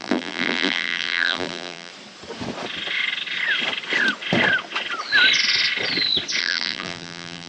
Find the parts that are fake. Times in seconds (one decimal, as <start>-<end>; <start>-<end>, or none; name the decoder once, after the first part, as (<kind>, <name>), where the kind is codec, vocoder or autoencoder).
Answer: 0.0-1.9 (vocoder, BigVGAN v2); 6.4-7.5